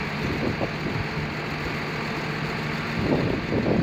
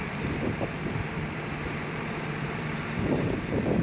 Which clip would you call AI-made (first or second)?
second